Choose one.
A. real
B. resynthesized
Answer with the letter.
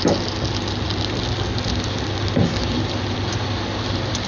A